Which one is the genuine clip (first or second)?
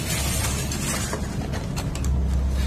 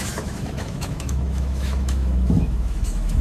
first